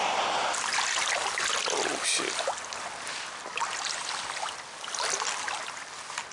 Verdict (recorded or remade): recorded